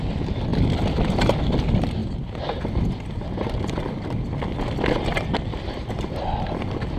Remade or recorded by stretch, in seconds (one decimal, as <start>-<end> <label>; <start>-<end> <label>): 0.0-7.0 recorded